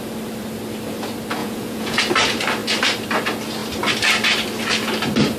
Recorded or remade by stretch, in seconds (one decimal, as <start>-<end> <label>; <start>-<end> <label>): 0.0-1.4 recorded; 1.4-2.0 remade; 2.0-5.4 recorded